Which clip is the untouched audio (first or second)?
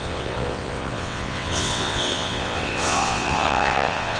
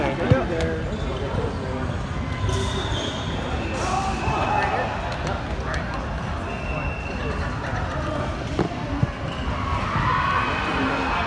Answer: second